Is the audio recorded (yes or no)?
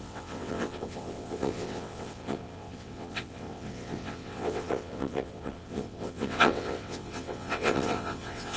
no